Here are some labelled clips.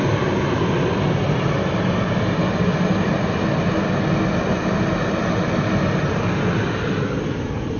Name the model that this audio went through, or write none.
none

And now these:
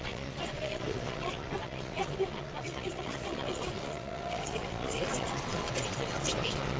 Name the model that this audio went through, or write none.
vocoder, WaveNeXt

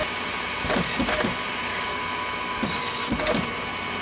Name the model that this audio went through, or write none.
none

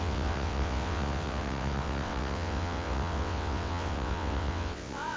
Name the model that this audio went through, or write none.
vocoder, WaveNeXt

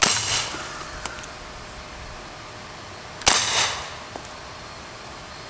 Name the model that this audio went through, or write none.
none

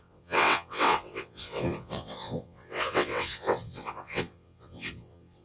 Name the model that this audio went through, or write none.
vocoder, WaveNeXt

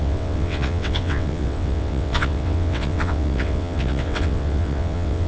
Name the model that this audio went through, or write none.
vocoder, WaveNeXt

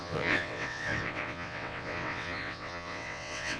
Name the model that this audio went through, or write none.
vocoder, WaveNeXt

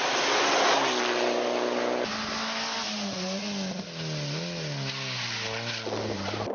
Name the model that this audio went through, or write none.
none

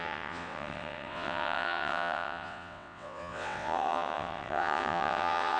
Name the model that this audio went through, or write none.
vocoder, WaveNeXt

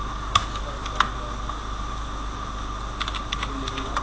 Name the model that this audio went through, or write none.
none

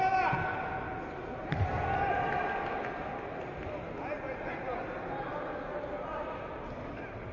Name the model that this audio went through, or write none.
none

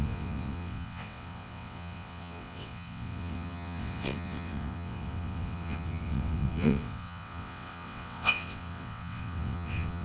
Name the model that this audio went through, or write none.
vocoder, WaveNeXt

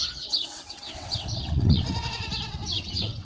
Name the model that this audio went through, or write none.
vocoder, WaveNeXt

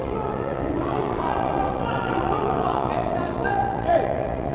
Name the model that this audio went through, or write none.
vocoder, WaveNeXt